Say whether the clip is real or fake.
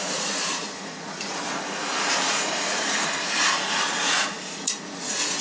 fake